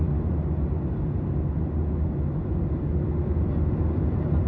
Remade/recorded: recorded